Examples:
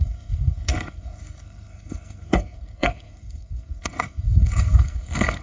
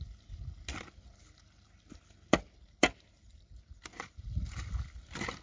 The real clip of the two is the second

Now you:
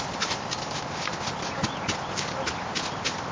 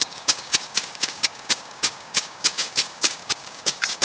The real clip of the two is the first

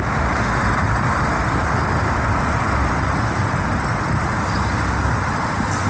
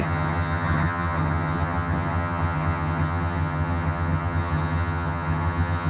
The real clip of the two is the first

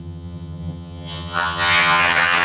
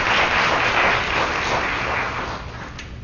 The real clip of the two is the second